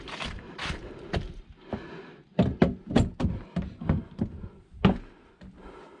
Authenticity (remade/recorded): recorded